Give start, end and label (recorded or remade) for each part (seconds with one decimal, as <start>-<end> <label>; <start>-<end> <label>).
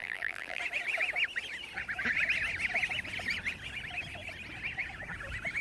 0.0-0.6 remade; 0.6-5.6 recorded